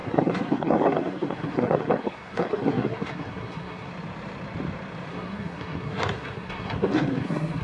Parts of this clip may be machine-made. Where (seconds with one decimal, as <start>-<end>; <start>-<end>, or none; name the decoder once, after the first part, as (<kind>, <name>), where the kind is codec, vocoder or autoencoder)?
0.0-3.9 (codec, SNAC); 5.1-7.6